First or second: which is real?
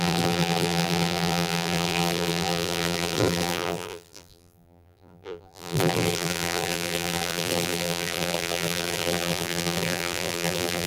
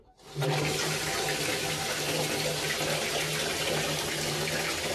second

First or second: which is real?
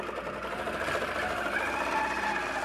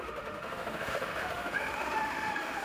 first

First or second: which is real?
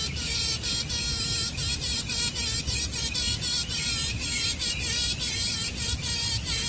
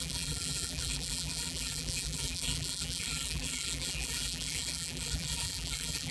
first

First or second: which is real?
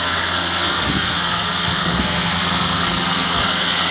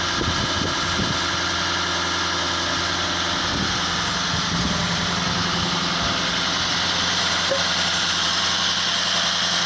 second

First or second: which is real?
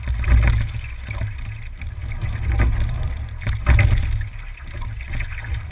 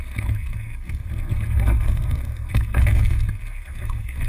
first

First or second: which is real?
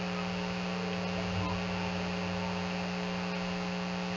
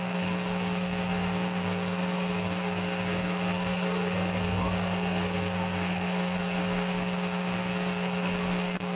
first